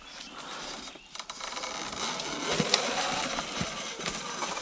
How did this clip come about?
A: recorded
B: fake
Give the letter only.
A